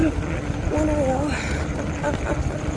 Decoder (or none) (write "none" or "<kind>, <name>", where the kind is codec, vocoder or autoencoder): none